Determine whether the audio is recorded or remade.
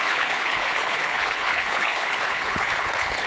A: remade